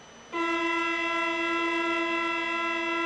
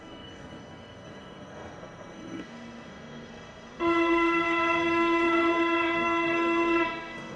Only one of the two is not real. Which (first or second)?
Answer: second